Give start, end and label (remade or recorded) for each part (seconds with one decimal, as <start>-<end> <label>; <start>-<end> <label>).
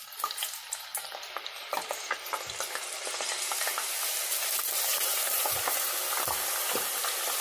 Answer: 0.0-0.9 recorded; 0.9-2.7 remade; 2.7-4.9 recorded; 4.9-6.0 remade; 6.0-7.4 recorded